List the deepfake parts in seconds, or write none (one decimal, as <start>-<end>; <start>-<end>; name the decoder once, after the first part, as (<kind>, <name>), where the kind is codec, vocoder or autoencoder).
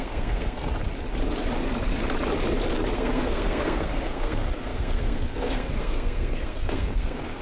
0.0-0.7 (codec, SNAC); 2.9-7.4